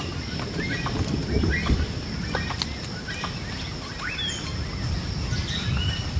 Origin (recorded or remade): recorded